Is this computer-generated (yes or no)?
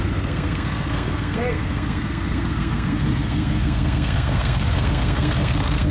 yes